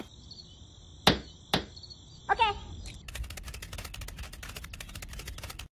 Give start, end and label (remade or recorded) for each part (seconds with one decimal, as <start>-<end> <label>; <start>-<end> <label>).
0.0-5.8 recorded